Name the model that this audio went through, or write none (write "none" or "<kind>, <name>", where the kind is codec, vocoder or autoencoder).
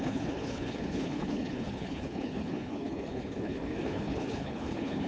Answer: codec, HILCodec